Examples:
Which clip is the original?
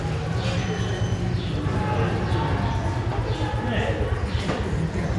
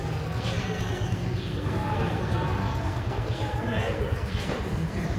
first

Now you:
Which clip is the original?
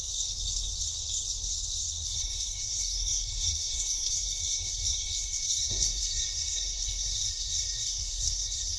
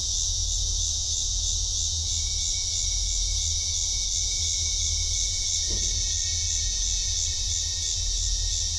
second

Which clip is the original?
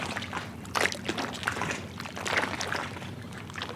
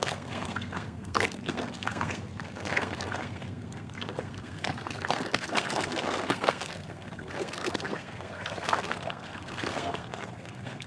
first